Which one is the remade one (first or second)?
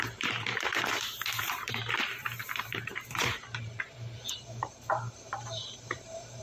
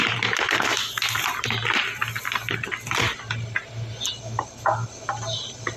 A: first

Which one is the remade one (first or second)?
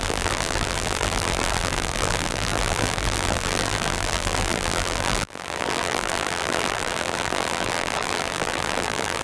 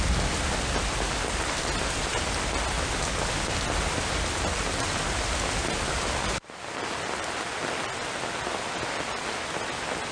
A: first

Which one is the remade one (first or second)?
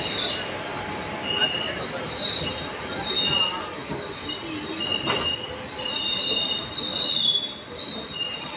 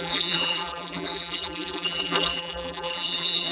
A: second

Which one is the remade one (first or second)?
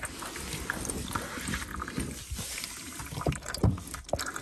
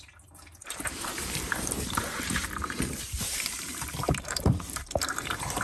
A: second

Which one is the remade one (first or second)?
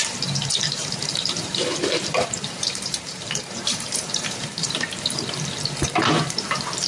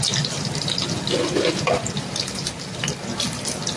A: first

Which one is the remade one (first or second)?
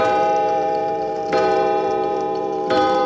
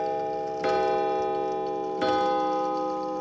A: first